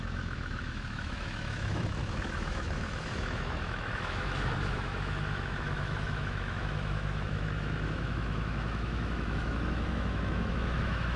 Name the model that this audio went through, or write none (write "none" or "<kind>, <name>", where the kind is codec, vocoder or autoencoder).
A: autoencoder, DAC-VAE